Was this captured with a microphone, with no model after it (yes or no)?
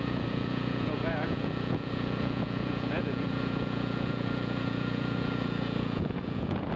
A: no